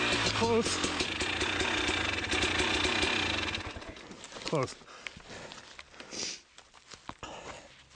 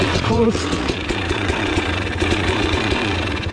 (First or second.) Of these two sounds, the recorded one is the first